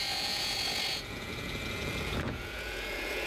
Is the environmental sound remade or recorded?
remade